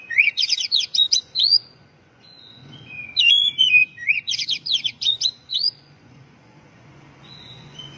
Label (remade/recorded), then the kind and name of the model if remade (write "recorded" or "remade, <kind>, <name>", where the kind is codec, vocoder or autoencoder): remade, vocoder, Vocos